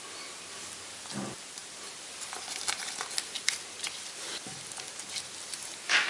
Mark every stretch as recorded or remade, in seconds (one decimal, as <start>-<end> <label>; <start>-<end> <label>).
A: 0.0-6.1 recorded